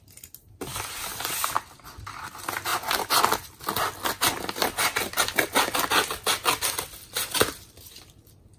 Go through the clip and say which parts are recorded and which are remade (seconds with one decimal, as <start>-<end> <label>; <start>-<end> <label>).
0.0-2.7 recorded; 2.7-3.2 remade; 3.2-8.6 recorded